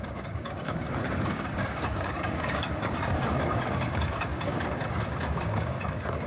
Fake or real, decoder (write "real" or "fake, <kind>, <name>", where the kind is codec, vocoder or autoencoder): fake, codec, DAC